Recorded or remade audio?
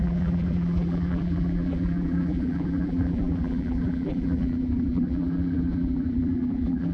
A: remade